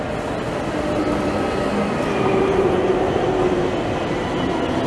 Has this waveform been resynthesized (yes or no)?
no